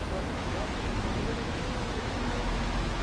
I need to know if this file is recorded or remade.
remade